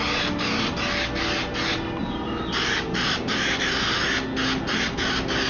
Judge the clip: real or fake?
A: real